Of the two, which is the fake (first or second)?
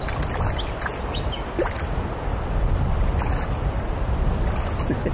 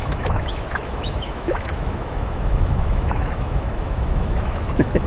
second